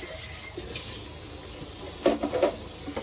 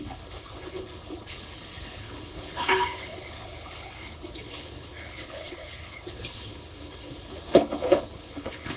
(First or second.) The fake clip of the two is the second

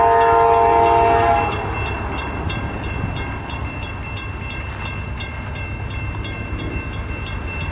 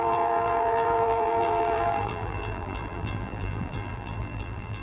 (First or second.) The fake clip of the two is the second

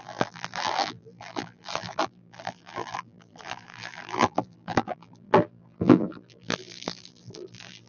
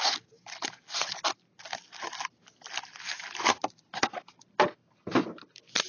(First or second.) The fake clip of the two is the first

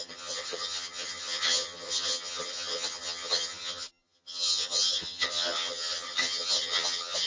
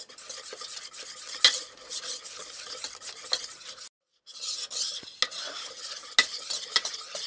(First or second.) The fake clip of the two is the first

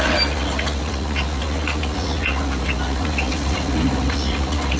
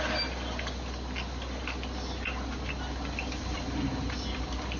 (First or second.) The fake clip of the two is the first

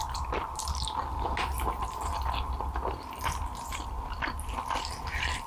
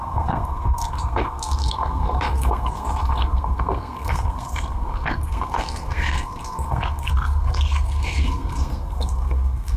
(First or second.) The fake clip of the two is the second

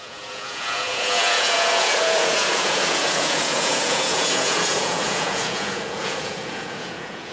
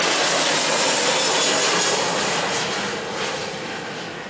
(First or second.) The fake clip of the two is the first